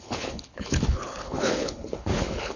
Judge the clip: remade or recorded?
remade